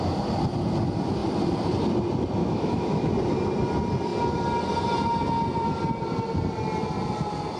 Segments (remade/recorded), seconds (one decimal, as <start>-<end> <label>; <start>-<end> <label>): 0.0-2.4 recorded; 2.4-3.1 remade; 3.1-7.6 recorded